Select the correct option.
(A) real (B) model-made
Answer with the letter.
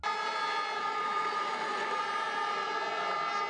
A